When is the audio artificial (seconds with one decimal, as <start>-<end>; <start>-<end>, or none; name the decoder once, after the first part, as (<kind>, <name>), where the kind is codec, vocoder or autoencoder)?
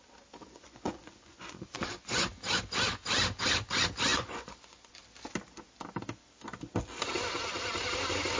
0.4-2.3 (vocoder, Vocos); 4.1-5.0